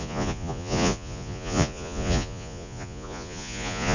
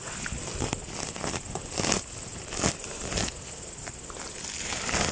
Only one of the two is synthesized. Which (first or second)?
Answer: first